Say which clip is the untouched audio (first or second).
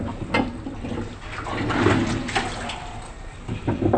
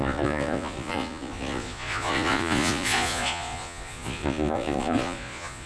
first